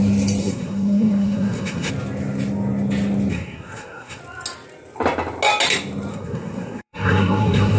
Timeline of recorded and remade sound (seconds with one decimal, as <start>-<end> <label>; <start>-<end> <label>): 0.0-0.4 recorded; 0.4-1.9 remade; 1.9-3.3 recorded; 3.3-4.2 remade; 4.2-6.1 recorded; 6.1-7.8 remade